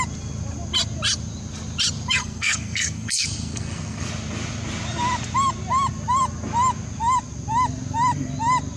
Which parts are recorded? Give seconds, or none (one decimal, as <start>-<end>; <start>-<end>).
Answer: 0.0-2.2; 4.1-8.8